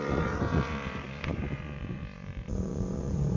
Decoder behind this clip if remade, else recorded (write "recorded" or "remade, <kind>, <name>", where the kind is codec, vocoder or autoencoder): remade, vocoder, Vocos